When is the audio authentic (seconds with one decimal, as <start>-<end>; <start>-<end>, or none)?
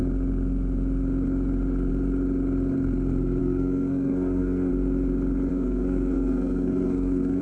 0.0-3.4; 4.7-5.5